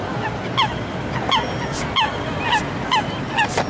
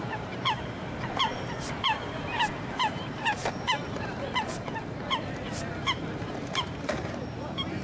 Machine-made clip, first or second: second